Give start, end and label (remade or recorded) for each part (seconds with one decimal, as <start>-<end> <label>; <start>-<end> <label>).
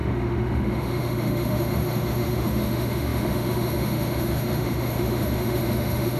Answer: 0.0-6.2 remade